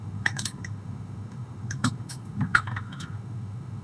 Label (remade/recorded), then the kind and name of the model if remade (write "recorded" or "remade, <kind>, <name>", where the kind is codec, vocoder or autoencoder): remade, autoencoder, DAC-VAE